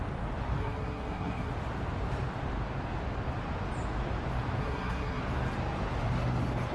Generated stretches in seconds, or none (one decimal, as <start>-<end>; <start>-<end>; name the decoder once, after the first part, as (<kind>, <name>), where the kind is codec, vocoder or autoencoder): 0.6-1.5 (codec, SNAC); 4.6-5.2